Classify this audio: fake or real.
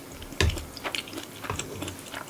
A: real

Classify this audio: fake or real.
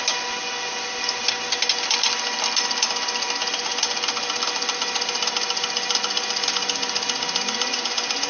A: real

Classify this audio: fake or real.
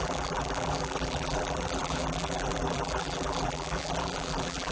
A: fake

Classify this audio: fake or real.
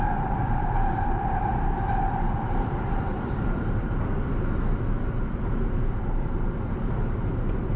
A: fake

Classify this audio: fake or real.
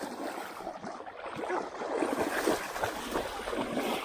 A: real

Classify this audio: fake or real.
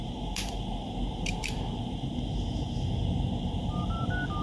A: fake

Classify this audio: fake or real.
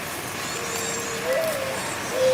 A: fake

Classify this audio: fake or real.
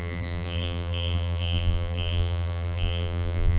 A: fake